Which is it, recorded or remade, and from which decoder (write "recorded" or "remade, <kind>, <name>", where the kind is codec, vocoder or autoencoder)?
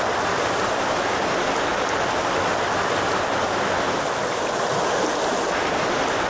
recorded